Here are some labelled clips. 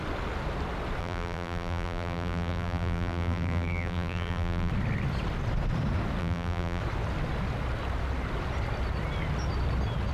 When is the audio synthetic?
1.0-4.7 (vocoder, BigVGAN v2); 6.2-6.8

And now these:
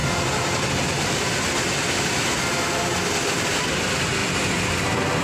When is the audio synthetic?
4.2-4.7 (vocoder, BigVGAN v2)